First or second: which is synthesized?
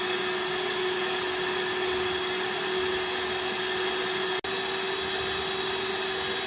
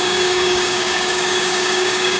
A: second